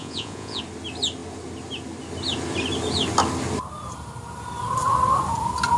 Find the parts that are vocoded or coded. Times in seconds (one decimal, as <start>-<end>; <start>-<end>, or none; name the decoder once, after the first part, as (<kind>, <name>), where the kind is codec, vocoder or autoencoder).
0.0-0.6 (vocoder, Vocos)